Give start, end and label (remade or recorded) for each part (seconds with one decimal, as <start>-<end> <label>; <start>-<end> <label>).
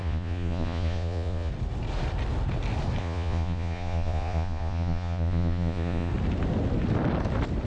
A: 0.0-1.5 remade; 1.5-3.0 recorded; 3.0-6.1 remade; 6.1-7.7 recorded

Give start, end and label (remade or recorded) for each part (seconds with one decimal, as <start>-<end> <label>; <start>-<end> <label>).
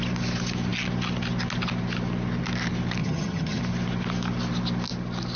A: 0.0-3.0 recorded; 3.0-3.6 remade; 3.6-5.4 recorded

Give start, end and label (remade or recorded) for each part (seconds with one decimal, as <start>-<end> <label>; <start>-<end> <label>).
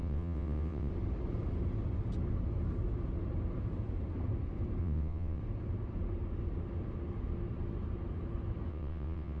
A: 0.0-0.9 remade; 0.9-4.8 recorded; 4.8-5.4 remade; 5.4-8.7 recorded; 8.7-9.4 remade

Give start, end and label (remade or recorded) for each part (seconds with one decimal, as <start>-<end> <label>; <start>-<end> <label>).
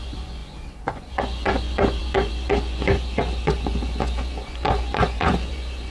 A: 0.0-5.9 remade